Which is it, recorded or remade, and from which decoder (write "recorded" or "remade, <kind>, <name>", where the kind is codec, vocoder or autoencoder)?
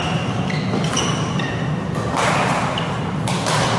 recorded